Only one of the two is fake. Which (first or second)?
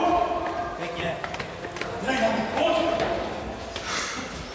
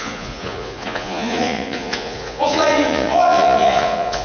second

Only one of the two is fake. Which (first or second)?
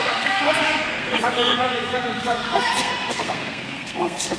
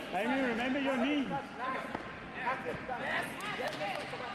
first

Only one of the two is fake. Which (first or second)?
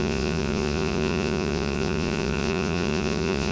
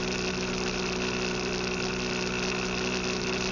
first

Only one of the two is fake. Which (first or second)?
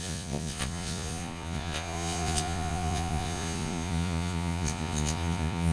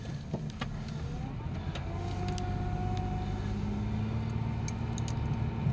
first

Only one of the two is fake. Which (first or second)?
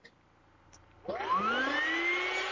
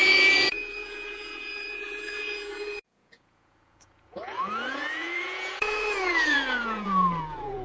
second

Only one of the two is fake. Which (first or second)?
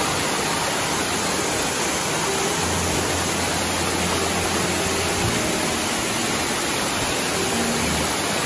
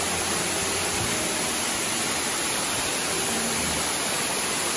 second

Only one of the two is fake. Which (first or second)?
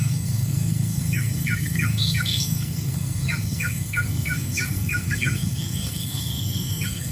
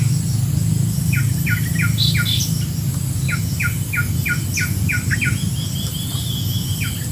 first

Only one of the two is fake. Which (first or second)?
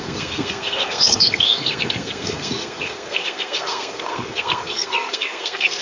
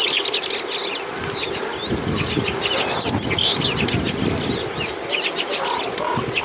first